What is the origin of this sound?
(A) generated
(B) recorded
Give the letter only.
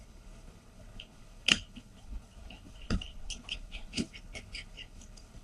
A